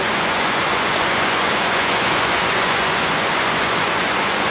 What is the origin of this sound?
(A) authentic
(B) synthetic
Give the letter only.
B